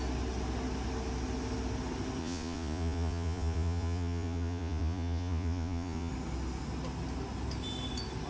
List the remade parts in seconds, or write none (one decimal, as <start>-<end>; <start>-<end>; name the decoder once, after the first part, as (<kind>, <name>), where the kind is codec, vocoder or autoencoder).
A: 2.2-6.1 (vocoder, Vocos)